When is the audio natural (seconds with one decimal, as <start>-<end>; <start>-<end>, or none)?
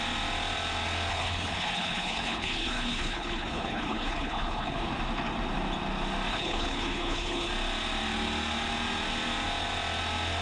0.0-1.1; 4.9-6.3; 7.5-10.4